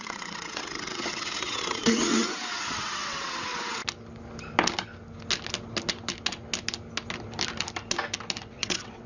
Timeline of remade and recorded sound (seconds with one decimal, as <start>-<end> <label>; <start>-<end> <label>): 0.0-3.8 remade; 3.8-8.4 recorded; 8.4-9.1 remade